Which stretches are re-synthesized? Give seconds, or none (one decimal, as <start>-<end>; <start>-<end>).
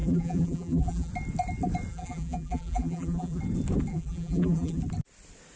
0.0-1.1; 1.9-3.4; 3.9-4.8